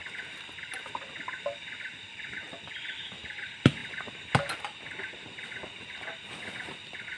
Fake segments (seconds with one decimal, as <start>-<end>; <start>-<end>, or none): none